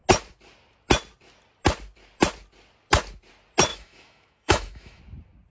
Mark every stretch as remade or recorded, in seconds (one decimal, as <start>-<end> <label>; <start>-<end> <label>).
0.0-3.7 recorded; 3.7-5.0 remade; 5.0-5.5 recorded